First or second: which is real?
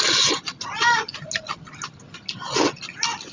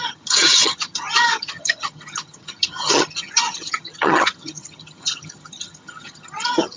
first